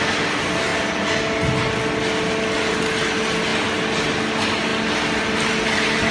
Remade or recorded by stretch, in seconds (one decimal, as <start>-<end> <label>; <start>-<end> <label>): 0.0-6.1 recorded